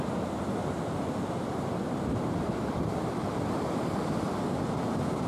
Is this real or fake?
real